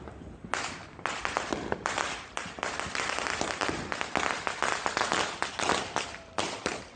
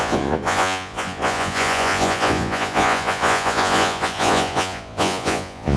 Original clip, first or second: first